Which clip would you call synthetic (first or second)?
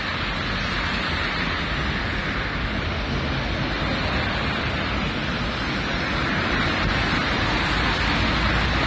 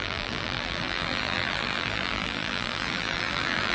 second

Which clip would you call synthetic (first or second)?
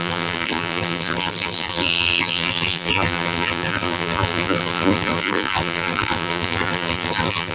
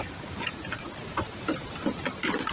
first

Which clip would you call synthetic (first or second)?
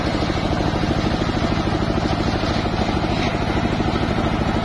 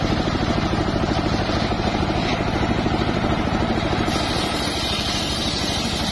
second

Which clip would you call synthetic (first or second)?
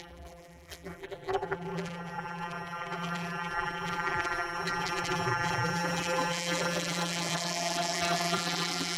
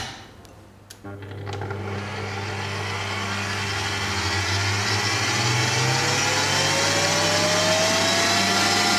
first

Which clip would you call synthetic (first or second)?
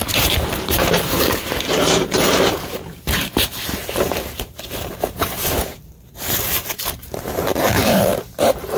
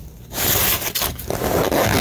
first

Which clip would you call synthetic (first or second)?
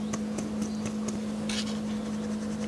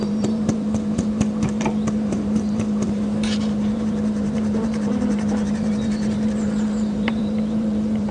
second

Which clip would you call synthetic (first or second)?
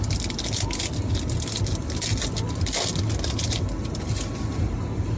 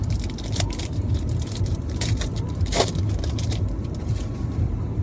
second